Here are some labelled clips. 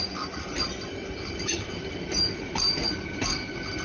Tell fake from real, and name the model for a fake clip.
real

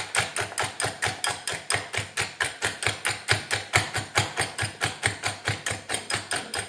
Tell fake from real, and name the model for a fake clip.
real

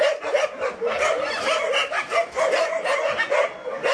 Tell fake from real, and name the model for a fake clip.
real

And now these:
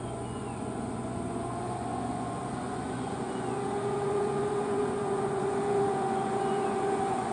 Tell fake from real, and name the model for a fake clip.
fake, vocoder, Vocos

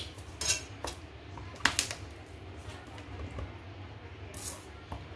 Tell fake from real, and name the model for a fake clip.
real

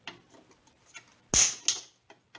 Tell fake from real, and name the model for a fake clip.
real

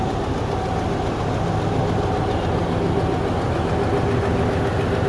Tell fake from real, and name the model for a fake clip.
real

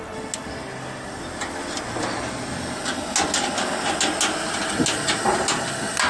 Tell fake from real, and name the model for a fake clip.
real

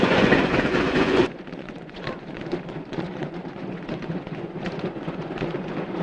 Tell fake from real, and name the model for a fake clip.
fake, vocoder, Vocos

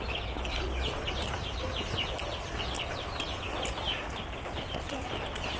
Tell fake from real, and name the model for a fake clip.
real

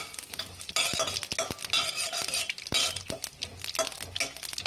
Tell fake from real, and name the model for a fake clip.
real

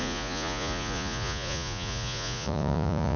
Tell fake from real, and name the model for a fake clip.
fake, vocoder, Vocos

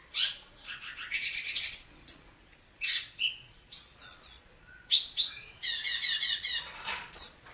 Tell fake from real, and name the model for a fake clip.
fake, vocoder, Vocos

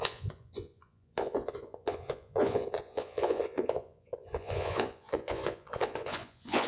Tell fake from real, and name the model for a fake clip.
fake, vocoder, Vocos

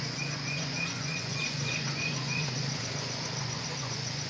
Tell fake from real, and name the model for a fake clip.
fake, vocoder, Vocos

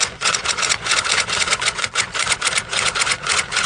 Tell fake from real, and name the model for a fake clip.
fake, vocoder, Vocos